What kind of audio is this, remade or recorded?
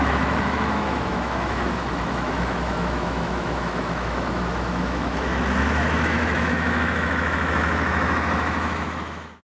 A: remade